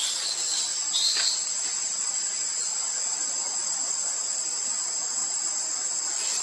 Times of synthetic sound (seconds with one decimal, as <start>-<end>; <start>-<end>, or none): none